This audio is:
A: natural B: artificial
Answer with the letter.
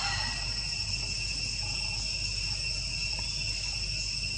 A